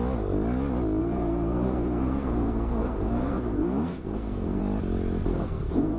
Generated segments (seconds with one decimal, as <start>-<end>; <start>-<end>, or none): 1.0-4.6; 5.3-6.0